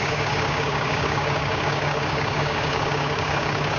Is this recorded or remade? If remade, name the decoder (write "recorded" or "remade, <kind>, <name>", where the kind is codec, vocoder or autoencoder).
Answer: remade, codec, DAC